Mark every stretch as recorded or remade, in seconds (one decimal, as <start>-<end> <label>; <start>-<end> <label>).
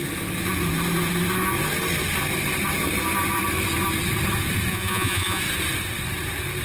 0.0-4.7 recorded; 4.7-5.4 remade; 5.4-6.6 recorded